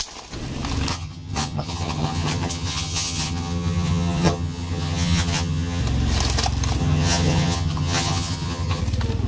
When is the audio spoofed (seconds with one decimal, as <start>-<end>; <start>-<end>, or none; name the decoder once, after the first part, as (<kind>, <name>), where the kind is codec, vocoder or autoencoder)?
0.9-5.8 (vocoder, HiFi-GAN); 6.8-8.8